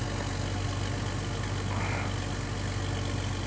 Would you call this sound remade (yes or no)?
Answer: no